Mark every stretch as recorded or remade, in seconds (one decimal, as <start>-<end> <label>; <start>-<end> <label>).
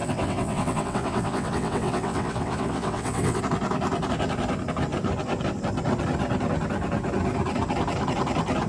0.0-3.4 remade; 3.4-8.7 recorded